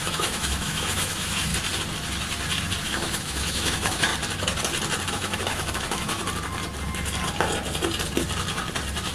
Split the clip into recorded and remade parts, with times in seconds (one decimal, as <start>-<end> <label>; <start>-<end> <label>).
0.0-1.5 remade; 1.5-2.8 recorded; 2.8-4.1 remade; 4.1-5.1 recorded; 5.1-6.2 remade; 6.2-9.1 recorded